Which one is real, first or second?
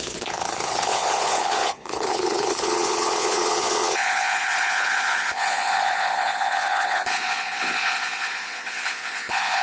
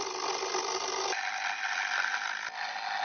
second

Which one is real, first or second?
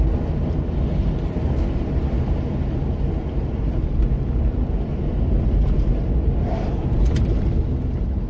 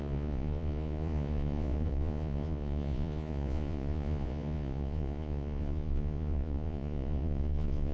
first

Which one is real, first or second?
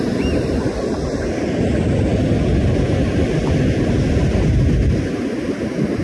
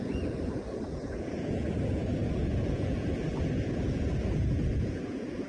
first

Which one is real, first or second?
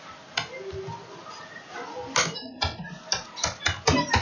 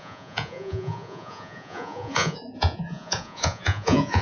first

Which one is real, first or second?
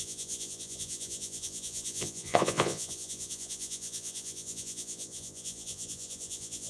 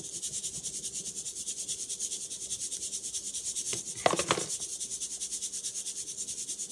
second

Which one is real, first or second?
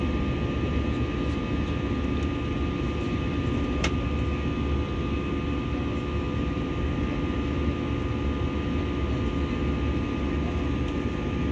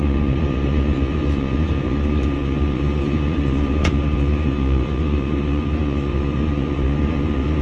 first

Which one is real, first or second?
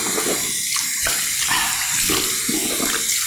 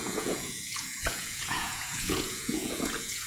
first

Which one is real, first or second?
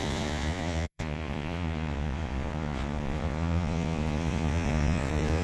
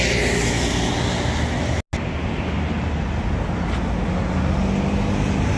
second